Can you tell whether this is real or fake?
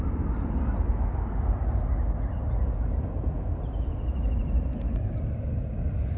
real